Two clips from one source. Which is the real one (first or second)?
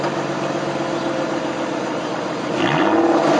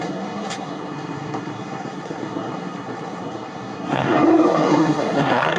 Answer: first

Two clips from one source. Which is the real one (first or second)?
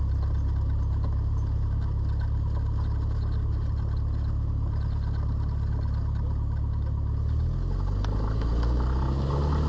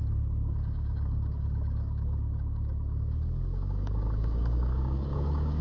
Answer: first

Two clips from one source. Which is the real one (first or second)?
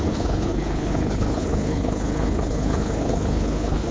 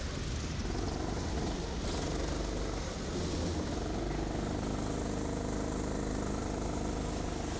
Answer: second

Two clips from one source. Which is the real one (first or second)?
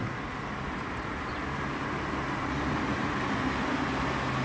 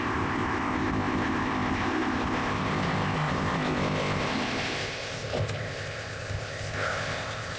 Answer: first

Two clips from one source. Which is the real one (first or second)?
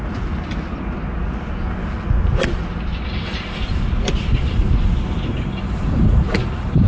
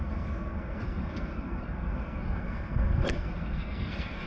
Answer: first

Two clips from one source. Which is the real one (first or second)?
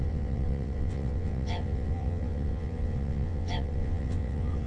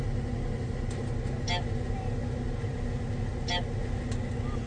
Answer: second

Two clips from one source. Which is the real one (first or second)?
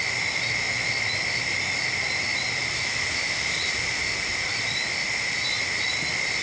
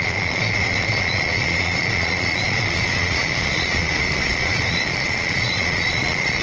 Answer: first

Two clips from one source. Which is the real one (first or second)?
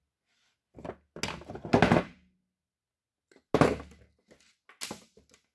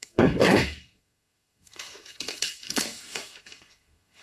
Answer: first